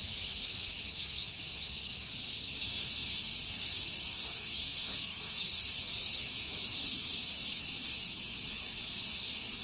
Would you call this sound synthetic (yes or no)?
yes